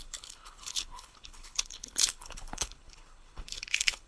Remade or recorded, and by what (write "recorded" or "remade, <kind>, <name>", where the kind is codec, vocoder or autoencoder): remade, codec, HILCodec